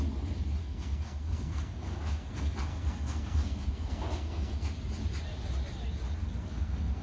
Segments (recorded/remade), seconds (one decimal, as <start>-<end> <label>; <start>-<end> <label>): 0.0-0.6 recorded; 0.6-4.8 remade; 4.8-6.2 recorded; 6.2-7.0 remade